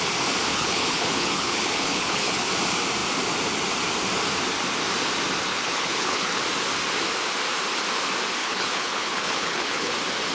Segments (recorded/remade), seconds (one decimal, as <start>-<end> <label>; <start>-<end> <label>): 0.0-0.5 recorded; 0.5-2.5 remade; 2.5-5.5 recorded; 5.5-6.4 remade; 6.4-8.4 recorded; 8.4-9.9 remade; 9.9-10.3 recorded